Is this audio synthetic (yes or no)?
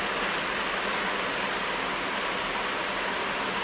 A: no